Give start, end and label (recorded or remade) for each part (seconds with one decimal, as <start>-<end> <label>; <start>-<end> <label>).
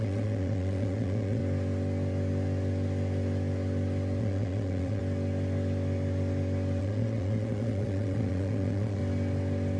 0.0-1.4 remade; 1.4-4.2 recorded; 4.2-5.0 remade; 5.0-6.8 recorded; 6.8-9.0 remade; 9.0-9.8 recorded